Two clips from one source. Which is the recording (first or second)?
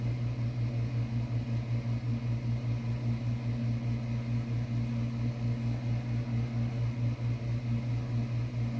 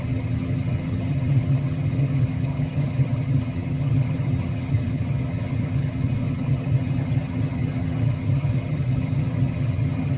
first